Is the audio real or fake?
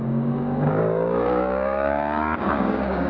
fake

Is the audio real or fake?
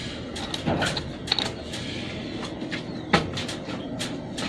real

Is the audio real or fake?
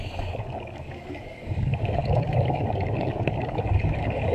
fake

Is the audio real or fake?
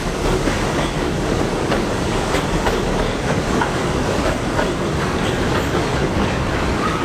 fake